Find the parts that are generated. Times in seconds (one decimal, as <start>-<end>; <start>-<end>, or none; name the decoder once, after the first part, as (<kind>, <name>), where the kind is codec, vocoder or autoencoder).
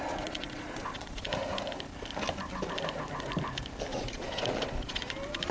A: 0.0-1.2 (vocoder, Vocos); 3.9-5.0